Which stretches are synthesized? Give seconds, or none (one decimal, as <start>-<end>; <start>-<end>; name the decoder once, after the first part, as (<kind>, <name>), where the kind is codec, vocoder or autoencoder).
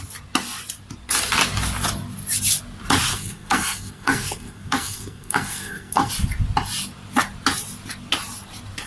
3.1-6.1 (codec, SNAC)